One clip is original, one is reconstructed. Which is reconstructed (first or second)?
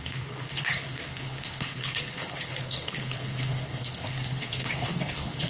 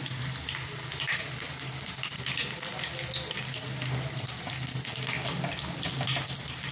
first